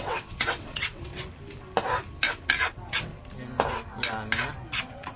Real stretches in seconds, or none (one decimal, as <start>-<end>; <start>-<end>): 1.1-2.7; 3.1-4.8

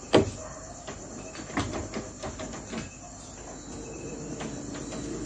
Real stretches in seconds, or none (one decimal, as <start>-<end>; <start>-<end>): 0.0-5.3